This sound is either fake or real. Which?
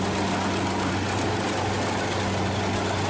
real